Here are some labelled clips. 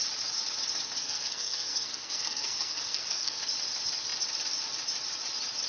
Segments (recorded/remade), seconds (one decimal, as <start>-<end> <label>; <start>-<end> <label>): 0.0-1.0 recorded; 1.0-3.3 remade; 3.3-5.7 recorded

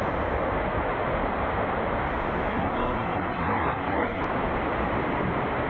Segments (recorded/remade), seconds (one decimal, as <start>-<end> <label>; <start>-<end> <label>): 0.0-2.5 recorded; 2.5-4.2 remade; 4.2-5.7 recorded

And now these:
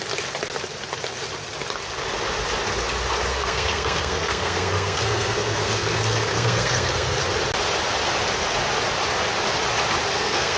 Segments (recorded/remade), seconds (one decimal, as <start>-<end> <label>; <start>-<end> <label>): 0.0-3.3 recorded; 3.3-7.2 remade; 7.2-10.1 recorded; 10.1-10.6 remade